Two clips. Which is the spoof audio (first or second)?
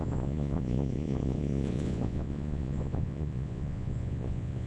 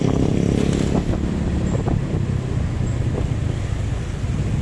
first